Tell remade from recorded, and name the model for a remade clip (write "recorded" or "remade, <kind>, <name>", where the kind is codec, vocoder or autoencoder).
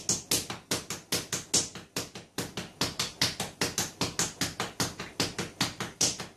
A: recorded